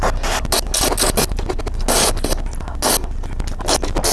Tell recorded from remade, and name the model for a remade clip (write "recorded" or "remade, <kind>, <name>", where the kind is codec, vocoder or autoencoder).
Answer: recorded